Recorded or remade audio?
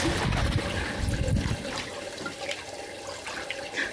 recorded